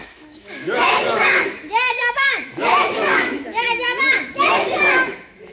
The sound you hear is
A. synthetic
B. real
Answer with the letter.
A